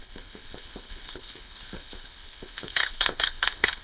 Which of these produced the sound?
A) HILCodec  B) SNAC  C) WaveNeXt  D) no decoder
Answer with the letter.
A